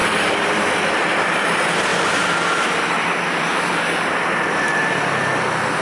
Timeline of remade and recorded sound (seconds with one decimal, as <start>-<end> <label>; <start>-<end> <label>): 0.0-0.7 remade; 0.7-1.9 recorded; 1.9-4.1 remade; 4.1-5.8 recorded